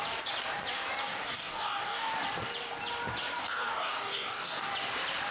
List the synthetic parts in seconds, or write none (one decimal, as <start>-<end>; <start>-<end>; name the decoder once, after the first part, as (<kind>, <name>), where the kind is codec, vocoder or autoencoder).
1.0-2.1 (codec, DAC); 3.4-4.7